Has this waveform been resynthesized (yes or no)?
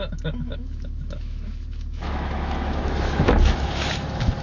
yes